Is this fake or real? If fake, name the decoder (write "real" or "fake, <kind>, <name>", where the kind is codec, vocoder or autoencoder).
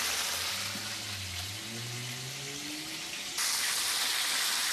fake, vocoder, BigVGAN v2